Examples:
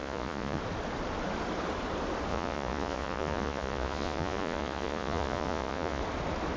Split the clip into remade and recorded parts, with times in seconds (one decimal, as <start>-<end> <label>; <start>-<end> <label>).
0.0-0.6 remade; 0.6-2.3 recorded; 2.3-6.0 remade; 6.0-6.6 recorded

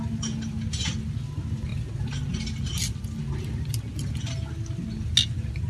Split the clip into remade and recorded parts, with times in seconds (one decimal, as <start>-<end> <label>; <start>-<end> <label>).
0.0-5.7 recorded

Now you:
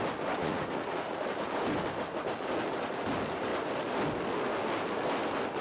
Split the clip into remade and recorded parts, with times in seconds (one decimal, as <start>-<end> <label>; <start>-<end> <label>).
0.0-0.4 recorded; 0.4-1.2 remade; 1.2-5.6 recorded